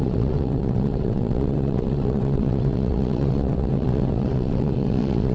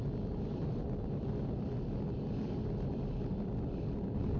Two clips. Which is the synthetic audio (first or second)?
first